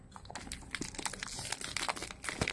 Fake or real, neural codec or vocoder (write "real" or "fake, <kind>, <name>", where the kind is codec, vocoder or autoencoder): real